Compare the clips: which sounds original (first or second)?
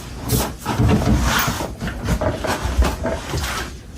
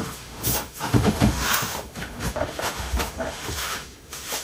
first